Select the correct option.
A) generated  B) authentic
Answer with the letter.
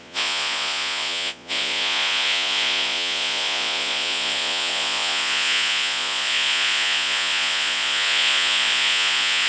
A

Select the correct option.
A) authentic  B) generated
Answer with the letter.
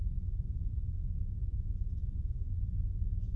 B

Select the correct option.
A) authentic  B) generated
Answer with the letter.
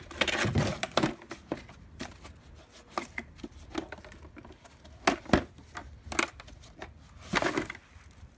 A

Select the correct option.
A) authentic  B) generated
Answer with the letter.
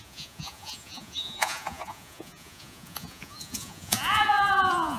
B